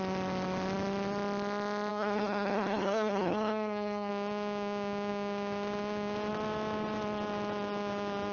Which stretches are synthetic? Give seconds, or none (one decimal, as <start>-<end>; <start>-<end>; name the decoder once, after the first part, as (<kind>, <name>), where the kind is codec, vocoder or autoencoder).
1.9-4.1 (codec, SNAC)